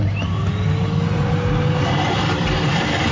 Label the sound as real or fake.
real